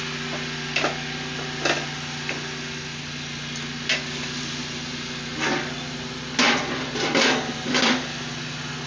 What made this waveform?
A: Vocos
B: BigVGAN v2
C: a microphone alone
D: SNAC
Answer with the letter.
C